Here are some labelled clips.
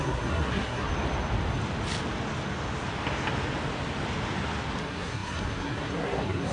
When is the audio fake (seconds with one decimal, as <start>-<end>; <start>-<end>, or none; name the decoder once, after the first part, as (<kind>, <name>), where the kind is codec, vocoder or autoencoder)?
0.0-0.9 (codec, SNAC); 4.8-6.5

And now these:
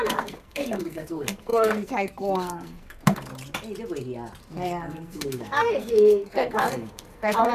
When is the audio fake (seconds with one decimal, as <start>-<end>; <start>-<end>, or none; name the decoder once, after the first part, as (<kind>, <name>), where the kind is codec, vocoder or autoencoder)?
0.0-3.3 (codec, SNAC); 4.4-7.5

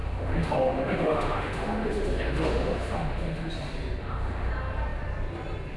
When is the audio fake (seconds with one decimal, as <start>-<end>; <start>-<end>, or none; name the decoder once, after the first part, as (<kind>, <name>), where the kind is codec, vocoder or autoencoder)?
0.0-3.5 (autoencoder, DAC-VAE); 4.0-4.5

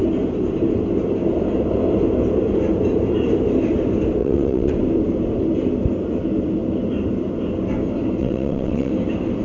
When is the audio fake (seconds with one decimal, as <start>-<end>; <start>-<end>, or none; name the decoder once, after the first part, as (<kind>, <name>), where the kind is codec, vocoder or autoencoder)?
4.2-4.7 (vocoder, WaveNeXt); 8.2-8.9

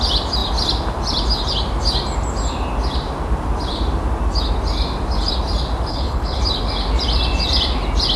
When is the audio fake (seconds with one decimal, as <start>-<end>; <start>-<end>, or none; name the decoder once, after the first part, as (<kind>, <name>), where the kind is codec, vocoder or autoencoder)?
5.9-6.4 (codec, HILCodec)

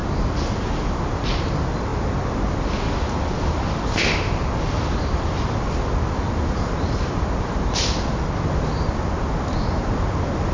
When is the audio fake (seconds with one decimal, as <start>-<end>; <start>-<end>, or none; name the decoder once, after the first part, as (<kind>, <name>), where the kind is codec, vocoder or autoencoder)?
none

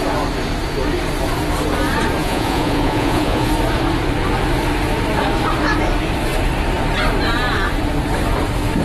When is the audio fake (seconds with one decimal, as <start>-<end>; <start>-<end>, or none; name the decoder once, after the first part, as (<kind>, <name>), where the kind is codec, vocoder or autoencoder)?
2.2-3.5 (vocoder, Vocos)

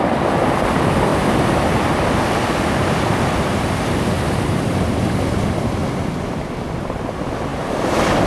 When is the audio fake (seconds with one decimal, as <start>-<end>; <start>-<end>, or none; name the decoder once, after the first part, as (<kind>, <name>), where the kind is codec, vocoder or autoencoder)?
1.1-4.7 (vocoder, BigVGAN v2)